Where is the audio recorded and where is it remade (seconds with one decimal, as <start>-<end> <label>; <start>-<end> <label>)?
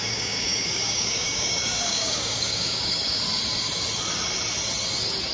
0.0-3.2 remade; 3.2-5.3 recorded